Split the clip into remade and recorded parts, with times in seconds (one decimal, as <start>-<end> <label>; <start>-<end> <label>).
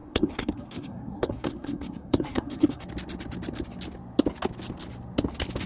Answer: 0.0-2.9 remade; 2.9-5.7 recorded